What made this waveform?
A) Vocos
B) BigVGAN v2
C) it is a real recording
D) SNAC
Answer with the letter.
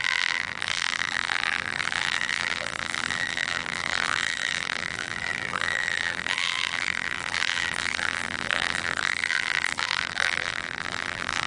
B